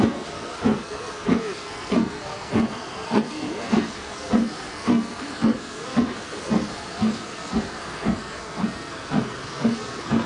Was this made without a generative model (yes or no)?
no